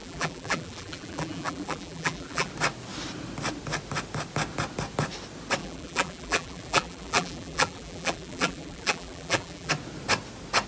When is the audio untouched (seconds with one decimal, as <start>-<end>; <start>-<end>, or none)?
2.5-5.6; 9.7-10.7